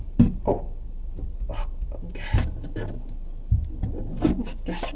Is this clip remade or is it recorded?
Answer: recorded